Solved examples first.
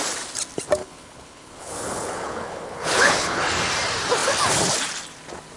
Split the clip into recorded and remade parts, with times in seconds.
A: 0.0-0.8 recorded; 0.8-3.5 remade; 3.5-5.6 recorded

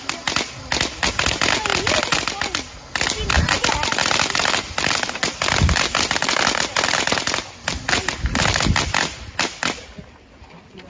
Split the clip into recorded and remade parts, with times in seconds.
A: 0.0-10.9 recorded